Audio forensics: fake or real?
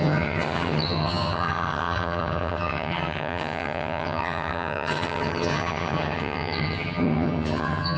fake